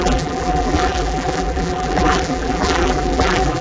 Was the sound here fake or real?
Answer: fake